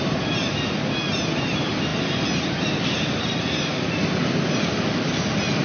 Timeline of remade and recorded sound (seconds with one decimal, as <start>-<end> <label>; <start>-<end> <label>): 0.0-5.6 recorded